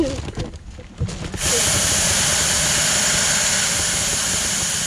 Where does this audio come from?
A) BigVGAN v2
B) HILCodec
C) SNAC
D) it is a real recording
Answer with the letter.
D